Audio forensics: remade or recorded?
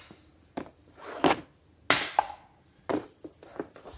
recorded